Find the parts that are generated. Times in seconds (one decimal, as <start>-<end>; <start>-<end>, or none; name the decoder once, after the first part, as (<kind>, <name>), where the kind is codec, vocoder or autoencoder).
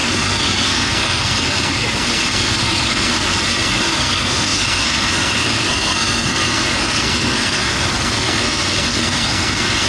0.0-9.9 (codec, SNAC)